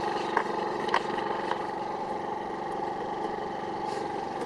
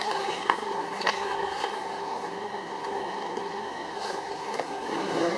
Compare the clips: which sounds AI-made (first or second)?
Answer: second